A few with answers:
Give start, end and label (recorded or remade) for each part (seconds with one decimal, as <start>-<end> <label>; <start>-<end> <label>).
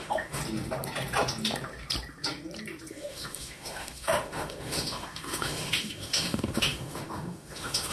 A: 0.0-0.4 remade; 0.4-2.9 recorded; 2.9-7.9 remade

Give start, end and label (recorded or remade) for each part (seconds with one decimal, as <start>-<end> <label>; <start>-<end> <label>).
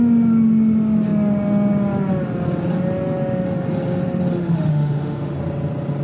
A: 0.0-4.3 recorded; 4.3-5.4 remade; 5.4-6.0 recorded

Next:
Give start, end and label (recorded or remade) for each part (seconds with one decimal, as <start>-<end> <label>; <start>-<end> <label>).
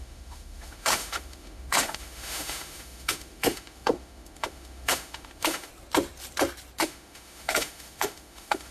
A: 0.0-5.7 remade; 5.7-6.8 recorded; 6.8-8.7 remade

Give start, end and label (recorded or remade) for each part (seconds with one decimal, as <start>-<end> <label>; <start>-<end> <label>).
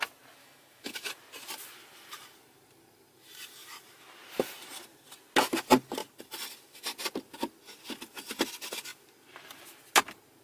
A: 0.0-0.4 recorded; 0.4-1.1 remade; 1.1-10.4 recorded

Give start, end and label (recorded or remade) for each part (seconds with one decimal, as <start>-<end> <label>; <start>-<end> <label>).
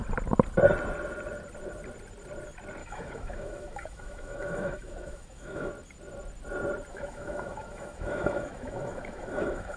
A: 0.0-2.8 recorded; 2.8-5.7 remade; 5.7-6.9 recorded; 6.9-9.8 remade